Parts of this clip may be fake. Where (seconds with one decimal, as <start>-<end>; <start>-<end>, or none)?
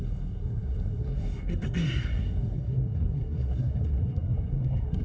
0.0-5.0